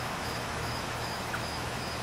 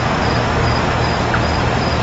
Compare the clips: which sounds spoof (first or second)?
first